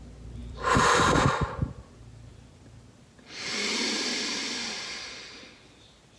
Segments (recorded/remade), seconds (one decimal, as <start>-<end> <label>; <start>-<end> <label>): 0.0-0.4 recorded; 0.4-1.0 remade; 1.0-2.3 recorded; 2.3-4.5 remade; 4.5-6.2 recorded